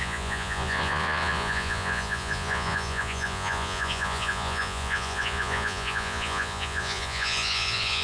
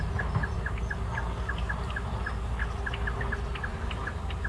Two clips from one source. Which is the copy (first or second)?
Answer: first